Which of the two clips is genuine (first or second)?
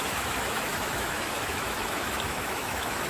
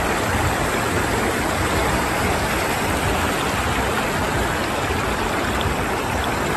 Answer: second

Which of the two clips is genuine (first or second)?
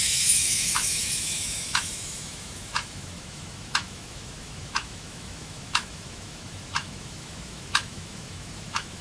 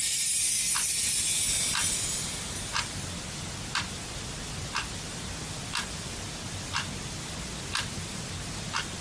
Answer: second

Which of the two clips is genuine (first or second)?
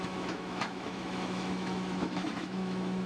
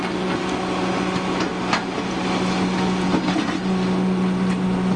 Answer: second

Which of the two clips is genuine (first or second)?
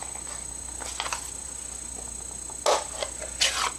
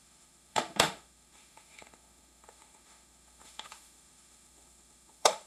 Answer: first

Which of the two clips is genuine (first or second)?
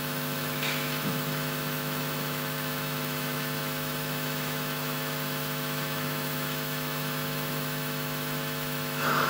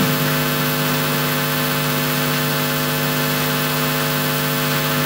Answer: second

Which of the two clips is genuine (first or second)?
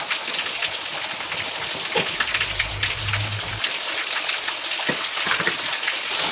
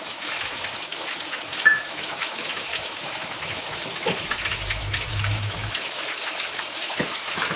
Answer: first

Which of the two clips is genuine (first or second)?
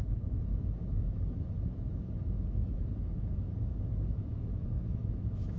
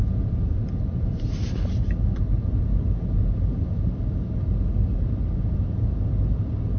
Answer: second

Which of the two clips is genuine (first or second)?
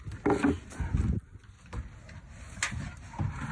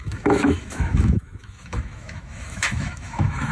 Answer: first